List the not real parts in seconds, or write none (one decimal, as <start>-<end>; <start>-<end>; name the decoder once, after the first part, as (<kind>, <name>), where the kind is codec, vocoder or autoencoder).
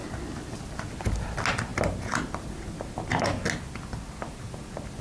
none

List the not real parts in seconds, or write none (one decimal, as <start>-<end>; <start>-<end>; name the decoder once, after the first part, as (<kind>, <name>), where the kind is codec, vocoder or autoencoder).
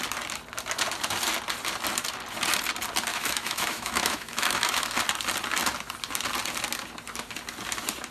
3.1-4.8 (autoencoder, DAC-VAE)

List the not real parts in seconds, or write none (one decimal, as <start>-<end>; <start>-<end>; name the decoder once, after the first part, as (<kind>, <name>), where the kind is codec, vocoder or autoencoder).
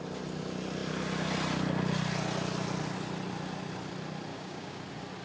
4.3-4.8 (codec, DAC)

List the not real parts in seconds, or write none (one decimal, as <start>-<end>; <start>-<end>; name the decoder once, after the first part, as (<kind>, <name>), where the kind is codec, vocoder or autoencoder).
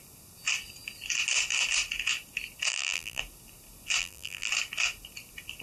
2.7-3.2 (vocoder, BigVGAN v2); 4.0-4.5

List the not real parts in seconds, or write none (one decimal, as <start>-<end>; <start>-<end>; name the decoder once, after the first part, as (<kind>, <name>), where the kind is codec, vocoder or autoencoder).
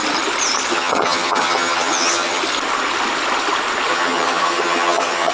0.7-2.4 (vocoder, HiFi-GAN); 3.9-5.3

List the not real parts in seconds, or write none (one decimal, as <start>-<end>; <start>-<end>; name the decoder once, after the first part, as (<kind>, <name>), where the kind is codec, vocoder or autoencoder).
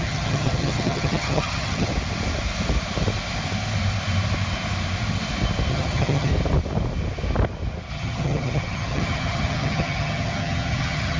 0.0-1.9 (vocoder, HiFi-GAN); 5.7-6.3; 7.9-11.2